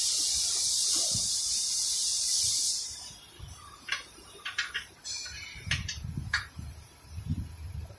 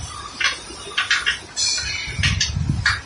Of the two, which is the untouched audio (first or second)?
second